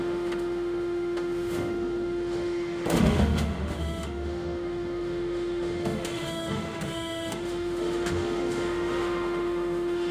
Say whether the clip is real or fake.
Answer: fake